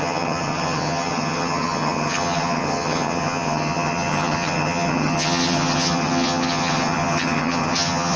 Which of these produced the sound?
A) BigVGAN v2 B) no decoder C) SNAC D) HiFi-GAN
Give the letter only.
D